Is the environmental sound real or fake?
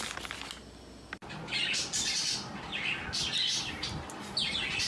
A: real